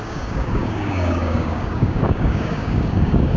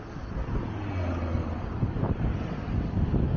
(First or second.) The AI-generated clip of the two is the first